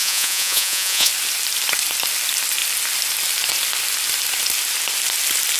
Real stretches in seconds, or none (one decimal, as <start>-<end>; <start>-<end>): 1.1-5.6